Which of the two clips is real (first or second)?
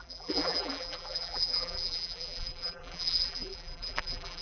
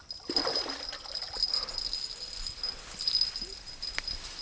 second